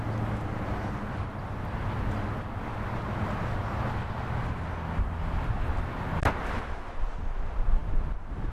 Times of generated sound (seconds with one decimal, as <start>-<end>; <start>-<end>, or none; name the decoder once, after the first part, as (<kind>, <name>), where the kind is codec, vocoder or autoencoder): none